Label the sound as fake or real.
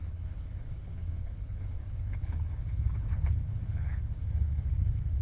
fake